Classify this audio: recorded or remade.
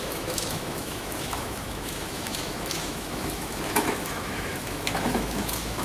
remade